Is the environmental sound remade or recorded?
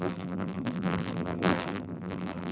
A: remade